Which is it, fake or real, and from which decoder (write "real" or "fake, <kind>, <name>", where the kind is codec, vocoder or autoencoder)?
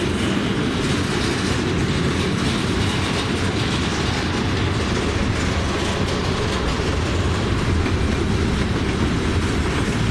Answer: real